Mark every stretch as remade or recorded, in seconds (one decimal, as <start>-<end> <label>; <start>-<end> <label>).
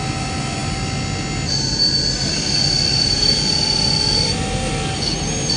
0.0-5.6 recorded